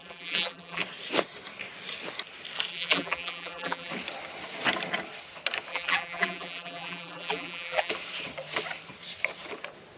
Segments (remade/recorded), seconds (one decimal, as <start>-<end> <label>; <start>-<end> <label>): 0.0-0.8 remade; 0.8-2.7 recorded; 2.7-3.9 remade; 3.9-5.7 recorded; 5.7-7.9 remade; 7.9-10.0 recorded